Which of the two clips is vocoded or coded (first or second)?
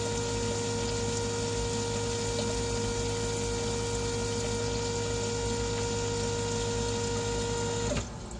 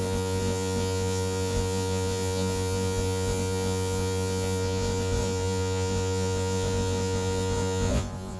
second